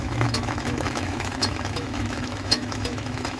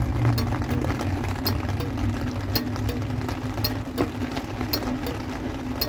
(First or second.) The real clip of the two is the second